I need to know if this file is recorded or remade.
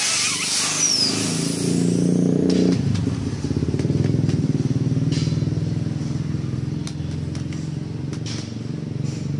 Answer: recorded